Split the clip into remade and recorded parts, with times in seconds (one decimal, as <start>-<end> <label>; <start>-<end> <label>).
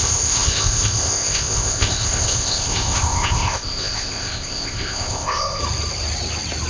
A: 0.0-5.6 remade; 5.6-6.7 recorded